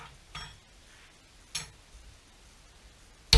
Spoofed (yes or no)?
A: no